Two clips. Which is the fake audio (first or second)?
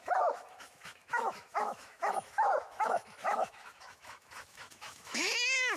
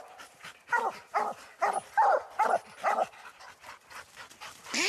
first